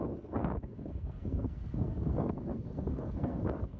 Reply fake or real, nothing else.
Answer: fake